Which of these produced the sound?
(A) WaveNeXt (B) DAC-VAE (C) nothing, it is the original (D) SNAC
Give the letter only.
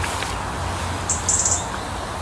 C